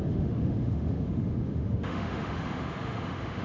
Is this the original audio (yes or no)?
no